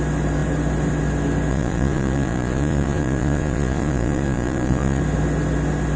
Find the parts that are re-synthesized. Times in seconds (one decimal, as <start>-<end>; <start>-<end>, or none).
1.5-5.0